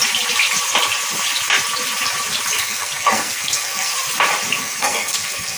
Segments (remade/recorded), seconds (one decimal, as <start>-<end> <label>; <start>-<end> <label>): 0.0-2.6 recorded; 2.6-3.9 remade; 3.9-4.6 recorded; 4.6-5.6 remade